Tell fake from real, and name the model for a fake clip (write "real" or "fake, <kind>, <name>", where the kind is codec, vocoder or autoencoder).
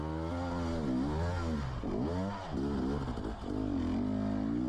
real